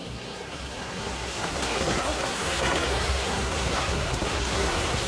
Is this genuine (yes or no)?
no